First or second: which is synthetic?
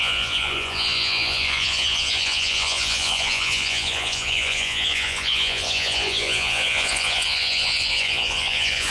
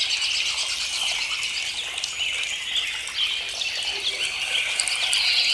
first